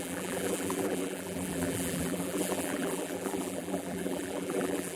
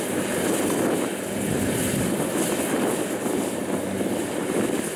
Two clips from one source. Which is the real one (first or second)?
second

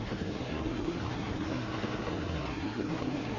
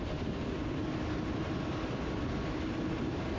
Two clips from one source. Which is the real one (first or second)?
second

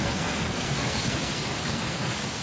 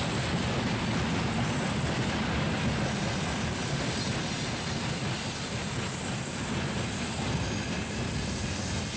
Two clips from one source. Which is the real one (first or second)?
second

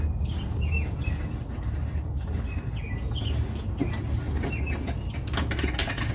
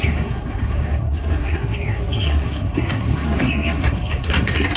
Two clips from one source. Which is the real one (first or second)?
first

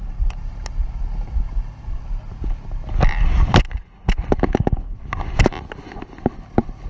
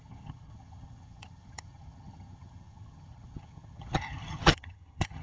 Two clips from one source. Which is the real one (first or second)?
first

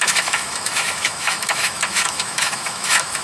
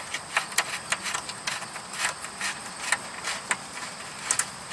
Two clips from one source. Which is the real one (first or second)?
second